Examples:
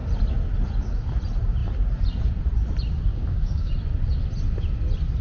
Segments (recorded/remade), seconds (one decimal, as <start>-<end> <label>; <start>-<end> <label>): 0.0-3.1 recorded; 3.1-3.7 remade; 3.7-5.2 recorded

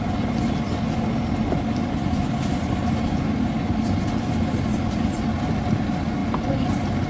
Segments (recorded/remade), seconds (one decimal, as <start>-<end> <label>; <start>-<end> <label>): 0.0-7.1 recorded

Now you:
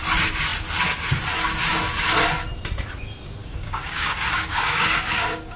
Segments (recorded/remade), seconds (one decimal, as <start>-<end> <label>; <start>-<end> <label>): 0.0-3.4 recorded; 3.4-5.6 remade